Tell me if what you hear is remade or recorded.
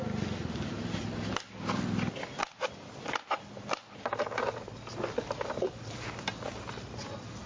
recorded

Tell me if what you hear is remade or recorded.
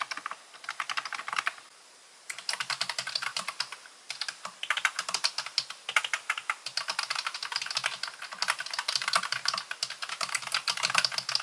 recorded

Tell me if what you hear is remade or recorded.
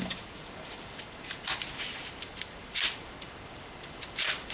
recorded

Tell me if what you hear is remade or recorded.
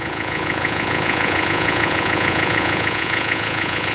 remade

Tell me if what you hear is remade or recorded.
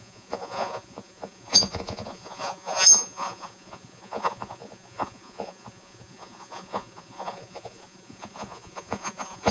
remade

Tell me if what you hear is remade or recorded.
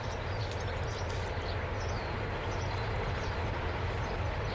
recorded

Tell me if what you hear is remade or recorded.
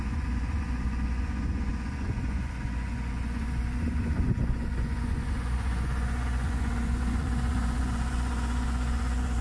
remade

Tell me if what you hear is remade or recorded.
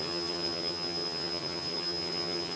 remade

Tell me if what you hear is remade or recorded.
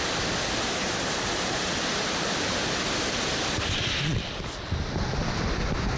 recorded